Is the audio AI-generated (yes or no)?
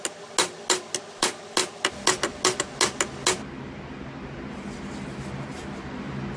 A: no